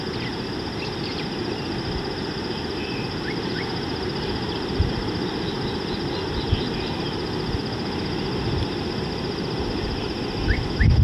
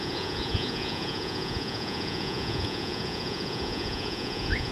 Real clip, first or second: first